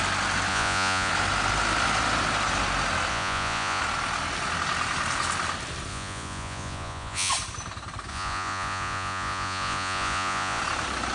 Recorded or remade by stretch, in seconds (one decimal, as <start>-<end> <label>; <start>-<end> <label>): 0.0-0.5 recorded; 0.5-1.1 remade; 1.1-3.1 recorded; 3.1-3.8 remade; 3.8-5.9 recorded; 5.9-7.3 remade; 7.3-8.1 recorded; 8.1-10.6 remade; 10.6-11.1 recorded